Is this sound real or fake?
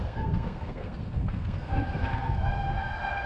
fake